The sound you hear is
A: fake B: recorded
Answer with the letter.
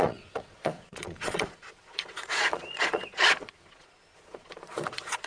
A